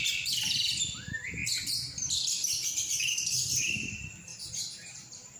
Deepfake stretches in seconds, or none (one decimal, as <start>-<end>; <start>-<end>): 4.3-5.4